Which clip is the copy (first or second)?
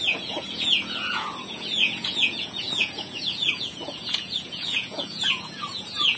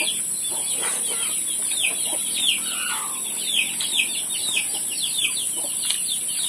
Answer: first